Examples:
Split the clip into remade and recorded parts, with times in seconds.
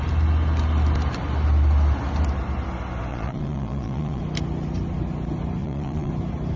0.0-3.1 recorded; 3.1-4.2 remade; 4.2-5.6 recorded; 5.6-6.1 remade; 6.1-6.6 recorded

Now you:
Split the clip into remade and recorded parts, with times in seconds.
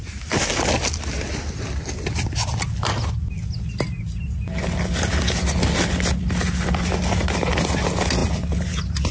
0.0-9.1 recorded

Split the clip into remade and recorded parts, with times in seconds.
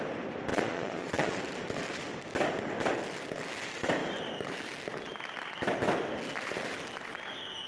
0.0-0.5 recorded; 0.5-1.4 remade; 1.4-7.7 recorded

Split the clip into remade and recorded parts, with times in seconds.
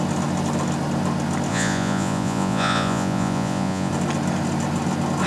0.0-1.5 recorded; 1.5-3.9 remade; 3.9-5.3 recorded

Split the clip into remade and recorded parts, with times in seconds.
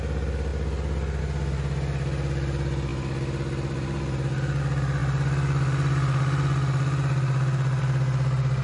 0.0-8.6 recorded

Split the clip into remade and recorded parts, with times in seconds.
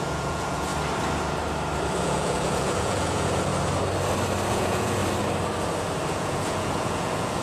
0.0-0.7 remade; 0.7-2.0 recorded; 2.0-3.5 remade; 3.5-4.5 recorded; 4.5-5.0 remade; 5.0-6.1 recorded; 6.1-7.4 remade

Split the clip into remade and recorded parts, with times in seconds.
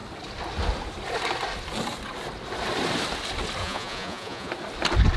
0.0-3.6 recorded; 3.6-4.5 remade; 4.5-5.2 recorded